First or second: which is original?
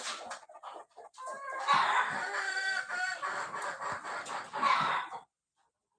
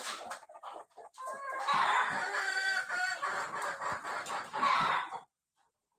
first